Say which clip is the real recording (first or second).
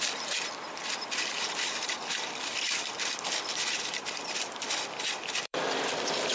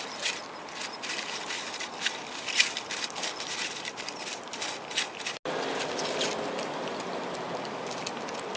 second